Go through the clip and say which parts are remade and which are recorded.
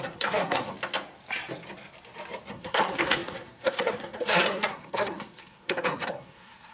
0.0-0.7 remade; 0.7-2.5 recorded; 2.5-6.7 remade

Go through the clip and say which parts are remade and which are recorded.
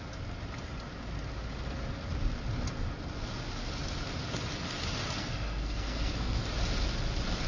0.0-5.2 recorded; 5.2-6.4 remade; 6.4-7.5 recorded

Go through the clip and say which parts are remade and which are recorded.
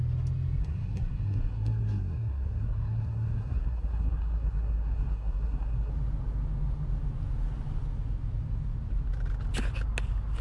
0.0-0.6 recorded; 0.6-5.9 remade; 5.9-10.4 recorded